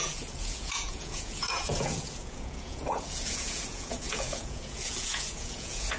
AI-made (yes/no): yes